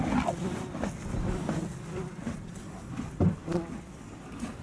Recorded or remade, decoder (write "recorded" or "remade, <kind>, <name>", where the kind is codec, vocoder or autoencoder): recorded